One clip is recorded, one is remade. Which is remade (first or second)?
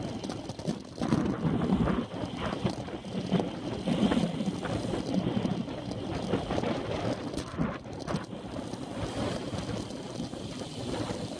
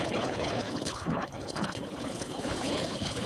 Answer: second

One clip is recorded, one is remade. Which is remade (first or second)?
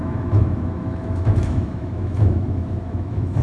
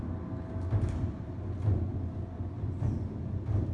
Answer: first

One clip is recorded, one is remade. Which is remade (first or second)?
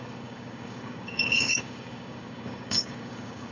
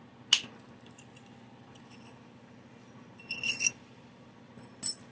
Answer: first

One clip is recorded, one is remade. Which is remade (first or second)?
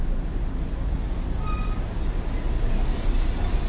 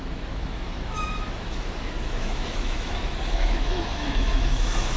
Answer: second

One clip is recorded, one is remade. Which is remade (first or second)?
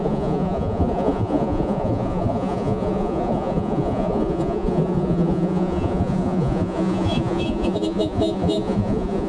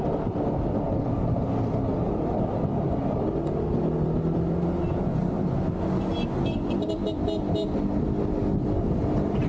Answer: first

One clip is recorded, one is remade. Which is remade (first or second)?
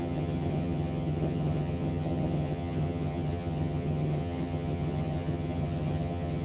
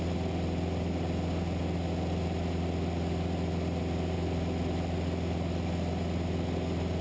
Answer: first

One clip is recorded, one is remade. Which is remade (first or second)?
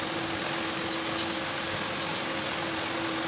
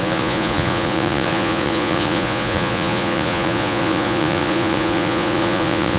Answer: second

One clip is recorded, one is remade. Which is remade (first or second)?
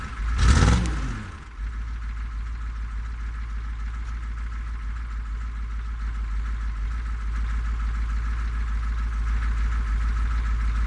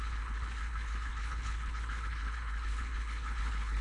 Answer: second